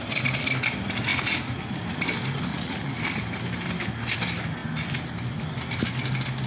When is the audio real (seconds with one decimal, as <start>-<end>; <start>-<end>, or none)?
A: 0.0-2.5; 3.0-6.5